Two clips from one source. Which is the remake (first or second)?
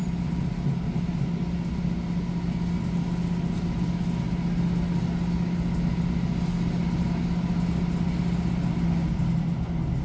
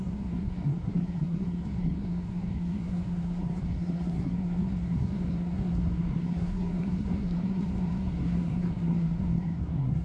second